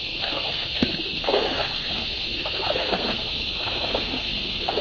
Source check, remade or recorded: remade